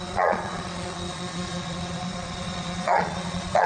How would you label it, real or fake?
fake